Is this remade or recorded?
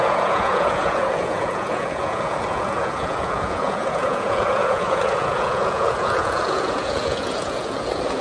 remade